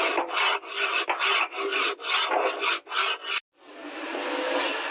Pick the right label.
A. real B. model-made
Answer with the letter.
A